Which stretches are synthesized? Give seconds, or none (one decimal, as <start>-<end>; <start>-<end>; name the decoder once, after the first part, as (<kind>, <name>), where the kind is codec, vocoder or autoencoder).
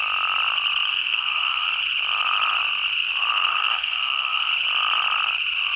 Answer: 0.9-1.7 (codec, SNAC); 3.5-4.5